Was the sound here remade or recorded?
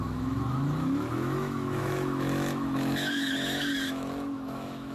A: remade